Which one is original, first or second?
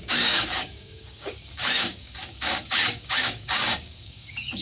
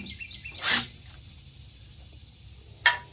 second